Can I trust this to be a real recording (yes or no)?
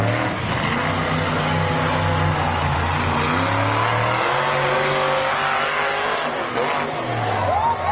yes